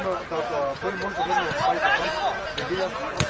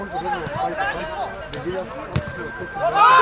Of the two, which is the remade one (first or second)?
first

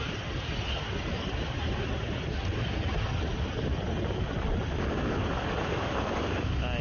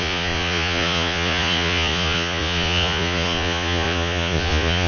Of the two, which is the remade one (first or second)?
second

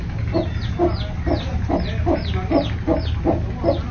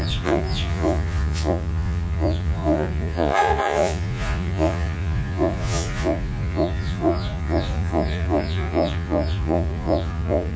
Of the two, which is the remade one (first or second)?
second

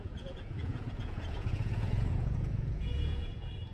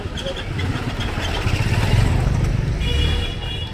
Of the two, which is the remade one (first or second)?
first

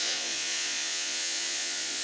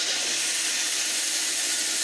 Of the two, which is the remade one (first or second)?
first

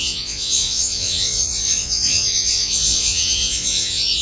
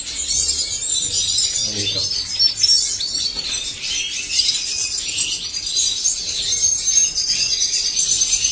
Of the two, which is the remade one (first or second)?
first